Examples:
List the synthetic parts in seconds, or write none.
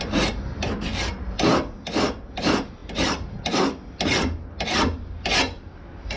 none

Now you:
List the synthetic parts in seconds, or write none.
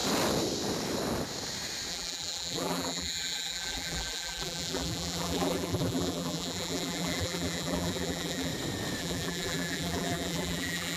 1.9-8.5 (vocoder, BigVGAN v2); 9.0-11.0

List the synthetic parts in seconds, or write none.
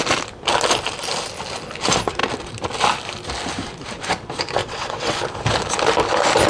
4.6-5.2 (vocoder, WaveNeXt)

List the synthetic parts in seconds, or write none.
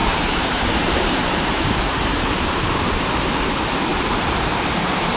0.0-2.5 (vocoder, BigVGAN v2); 3.9-5.2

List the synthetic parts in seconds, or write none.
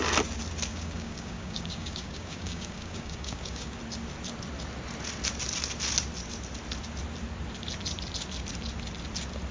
0.7-3.8 (codec, DAC)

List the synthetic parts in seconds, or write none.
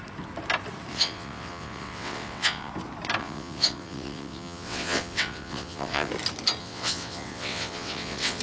0.9-2.7 (vocoder, WaveNeXt); 3.2-6.1; 6.6-8.4